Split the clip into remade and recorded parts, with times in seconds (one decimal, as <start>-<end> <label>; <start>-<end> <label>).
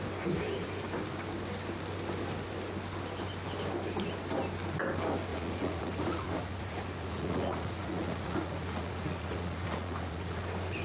0.0-5.3 recorded; 5.3-10.4 remade; 10.4-10.8 recorded